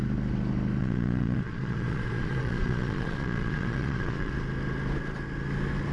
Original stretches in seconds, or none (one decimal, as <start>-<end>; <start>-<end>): 0.0-0.8; 4.3-5.9